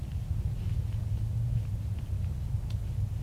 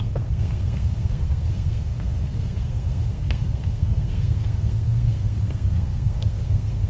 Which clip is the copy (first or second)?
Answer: second